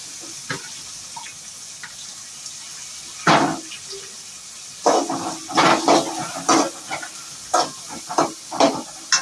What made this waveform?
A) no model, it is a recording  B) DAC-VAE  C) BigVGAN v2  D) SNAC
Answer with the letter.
A